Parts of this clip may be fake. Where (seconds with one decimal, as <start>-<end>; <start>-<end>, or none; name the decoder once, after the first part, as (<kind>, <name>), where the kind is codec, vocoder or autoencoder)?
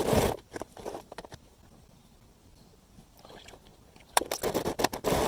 0.5-1.8 (vocoder, BigVGAN v2); 3.7-4.2